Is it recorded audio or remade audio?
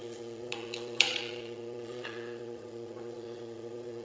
remade